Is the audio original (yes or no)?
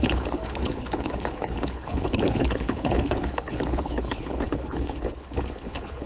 no